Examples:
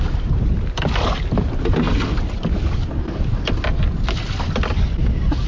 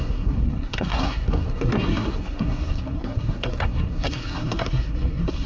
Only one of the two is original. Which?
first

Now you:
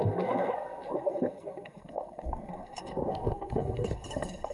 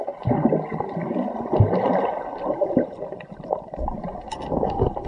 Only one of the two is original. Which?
second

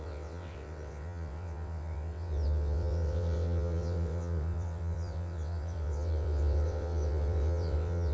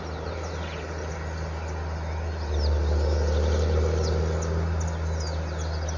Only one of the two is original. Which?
second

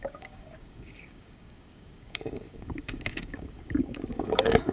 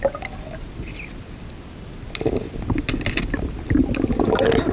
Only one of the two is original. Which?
second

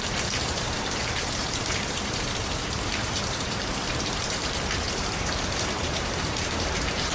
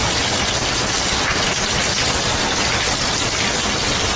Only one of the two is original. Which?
second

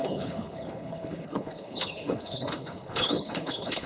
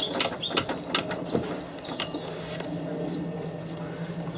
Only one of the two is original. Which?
second